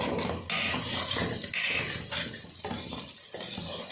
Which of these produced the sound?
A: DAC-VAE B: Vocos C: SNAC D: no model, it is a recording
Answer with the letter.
D